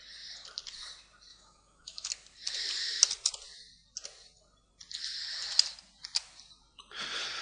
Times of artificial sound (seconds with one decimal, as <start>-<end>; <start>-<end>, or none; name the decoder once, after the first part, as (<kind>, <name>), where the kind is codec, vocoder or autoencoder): 1.3-2.1 (autoencoder, DAC-VAE)